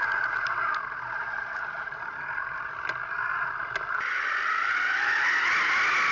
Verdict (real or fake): real